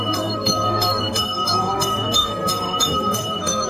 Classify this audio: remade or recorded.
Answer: remade